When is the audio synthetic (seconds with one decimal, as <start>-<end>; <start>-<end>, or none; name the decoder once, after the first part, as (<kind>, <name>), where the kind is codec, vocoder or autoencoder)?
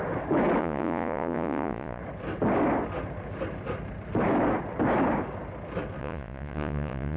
0.6-2.0 (vocoder, Vocos); 6.0-7.2